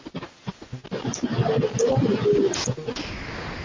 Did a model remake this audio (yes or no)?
no